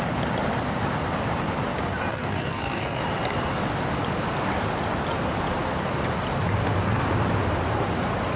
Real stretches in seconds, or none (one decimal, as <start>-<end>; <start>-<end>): 0.0-2.1; 3.0-8.4